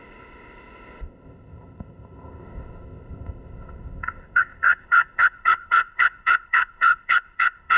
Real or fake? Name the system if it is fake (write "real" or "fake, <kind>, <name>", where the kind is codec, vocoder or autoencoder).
fake, codec, ZipCodec